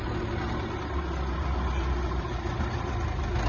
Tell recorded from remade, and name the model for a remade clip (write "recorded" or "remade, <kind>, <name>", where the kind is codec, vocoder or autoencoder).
recorded